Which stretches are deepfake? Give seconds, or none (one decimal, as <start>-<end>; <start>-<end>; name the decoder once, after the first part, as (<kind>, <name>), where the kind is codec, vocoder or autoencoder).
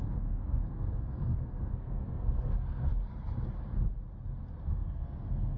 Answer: 0.0-2.9 (codec, SNAC); 4.7-5.6